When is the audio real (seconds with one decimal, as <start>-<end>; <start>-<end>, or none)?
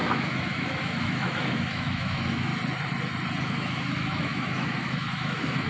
2.5-3.4